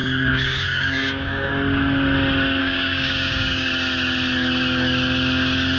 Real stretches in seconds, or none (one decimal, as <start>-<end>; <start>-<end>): 1.5-2.6; 3.7-5.8